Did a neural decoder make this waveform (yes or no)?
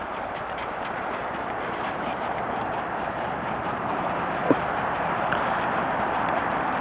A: yes